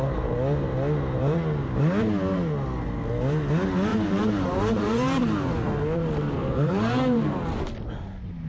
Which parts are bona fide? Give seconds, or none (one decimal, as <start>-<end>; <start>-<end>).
0.0-3.9; 5.5-6.5; 7.7-8.5